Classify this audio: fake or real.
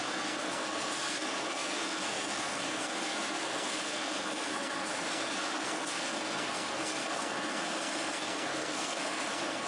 fake